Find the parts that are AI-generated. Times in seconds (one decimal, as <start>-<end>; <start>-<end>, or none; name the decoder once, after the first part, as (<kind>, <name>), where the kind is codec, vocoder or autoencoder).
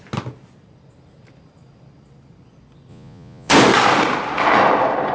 2.9-3.5 (vocoder, Vocos)